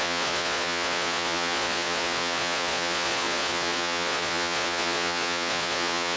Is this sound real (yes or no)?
no